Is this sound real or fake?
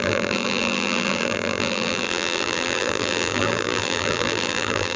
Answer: fake